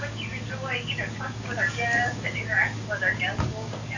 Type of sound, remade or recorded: remade